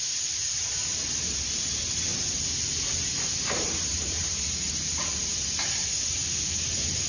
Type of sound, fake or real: real